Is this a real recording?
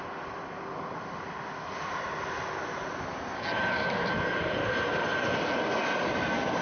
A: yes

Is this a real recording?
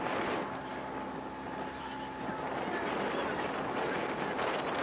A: yes